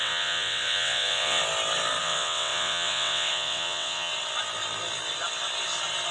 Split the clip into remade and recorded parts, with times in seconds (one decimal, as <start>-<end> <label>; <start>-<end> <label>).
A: 0.0-1.4 remade; 1.4-2.0 recorded; 2.0-4.1 remade; 4.1-6.1 recorded